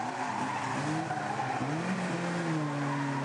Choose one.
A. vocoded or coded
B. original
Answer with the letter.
B